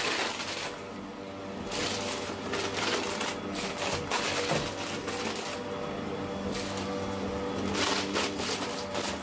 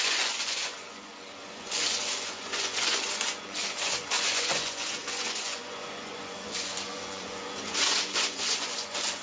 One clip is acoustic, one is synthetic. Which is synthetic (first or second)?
second